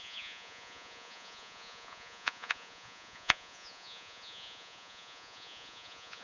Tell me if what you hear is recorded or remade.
remade